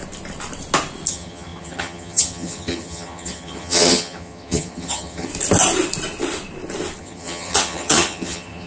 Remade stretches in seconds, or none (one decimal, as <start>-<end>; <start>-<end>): 1.1-5.3; 7.0-8.7